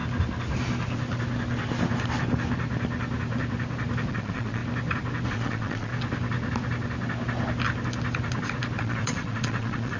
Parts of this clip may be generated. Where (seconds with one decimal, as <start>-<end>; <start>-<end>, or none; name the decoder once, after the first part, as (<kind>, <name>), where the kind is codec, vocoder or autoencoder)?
4.1-4.6 (vocoder, Vocos); 5.3-5.9; 8.8-10.0